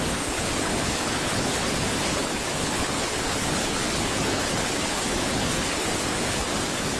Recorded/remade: remade